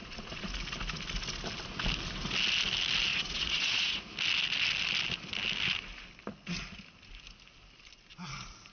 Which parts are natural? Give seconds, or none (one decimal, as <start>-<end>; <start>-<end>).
0.5-3.1; 4.1-8.7